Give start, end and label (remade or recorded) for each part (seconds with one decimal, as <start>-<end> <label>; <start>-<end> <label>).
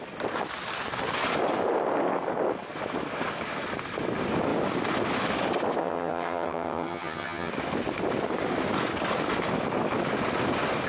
0.0-5.8 recorded; 5.8-7.5 remade; 7.5-10.9 recorded